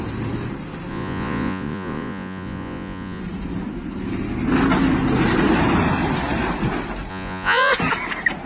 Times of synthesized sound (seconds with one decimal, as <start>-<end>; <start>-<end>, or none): 0.9-3.2; 7.1-7.7